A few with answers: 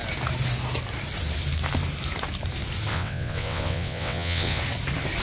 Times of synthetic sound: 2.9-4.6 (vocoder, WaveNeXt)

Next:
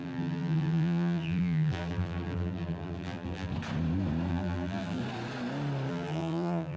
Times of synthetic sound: 0.0-3.5 (vocoder, BigVGAN v2); 4.3-5.0; 5.9-6.8

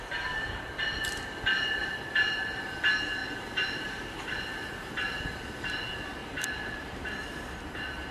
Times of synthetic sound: 1.8-2.8 (vocoder, BigVGAN v2); 6.2-7.0

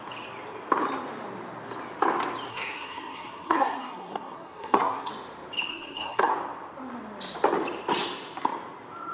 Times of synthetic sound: 2.5-5.1 (codec, SNAC); 5.7-6.3

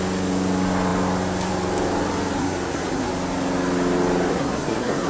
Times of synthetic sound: 2.4-3.1 (codec, SNAC); 4.3-5.1

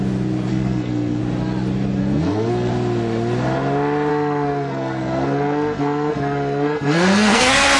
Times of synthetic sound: 0.5-1.2 (codec, SNAC); 2.0-2.7; 4.1-7.8

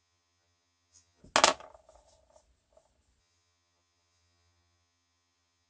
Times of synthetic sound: 0.0-1.2 (vocoder, HiFi-GAN); 3.2-5.7